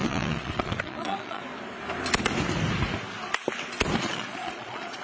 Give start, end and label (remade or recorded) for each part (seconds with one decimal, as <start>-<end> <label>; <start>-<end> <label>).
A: 0.0-1.4 remade; 1.4-4.0 recorded; 4.0-5.0 remade